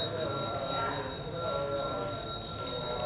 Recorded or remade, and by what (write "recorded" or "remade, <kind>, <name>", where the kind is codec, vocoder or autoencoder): recorded